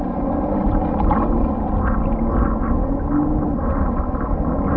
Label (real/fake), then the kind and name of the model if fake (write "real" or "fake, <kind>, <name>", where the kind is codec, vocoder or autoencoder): real